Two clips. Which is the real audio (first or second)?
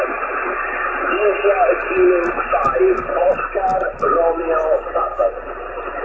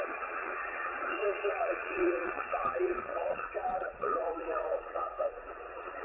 first